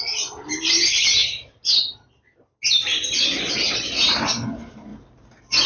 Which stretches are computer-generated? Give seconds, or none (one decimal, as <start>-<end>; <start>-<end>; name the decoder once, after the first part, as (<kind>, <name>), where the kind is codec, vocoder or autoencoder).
none